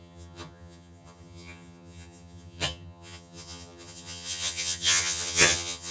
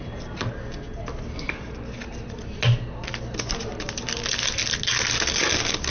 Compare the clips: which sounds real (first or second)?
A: second